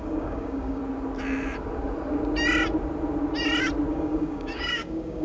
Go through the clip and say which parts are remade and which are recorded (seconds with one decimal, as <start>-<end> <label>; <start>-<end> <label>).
0.0-0.8 remade; 0.8-3.9 recorded; 3.9-5.2 remade